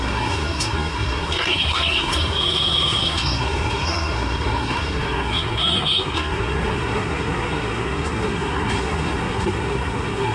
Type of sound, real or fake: fake